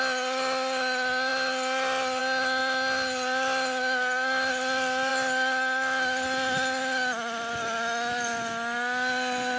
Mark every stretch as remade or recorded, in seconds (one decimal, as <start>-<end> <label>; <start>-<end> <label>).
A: 0.0-9.6 recorded